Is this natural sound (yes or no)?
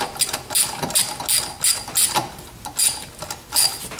yes